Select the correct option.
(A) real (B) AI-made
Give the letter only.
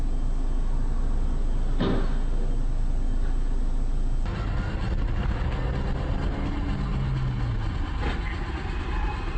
A